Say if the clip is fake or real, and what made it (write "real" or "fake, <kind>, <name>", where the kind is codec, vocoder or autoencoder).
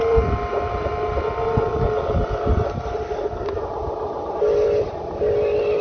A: real